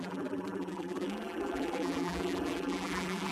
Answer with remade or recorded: remade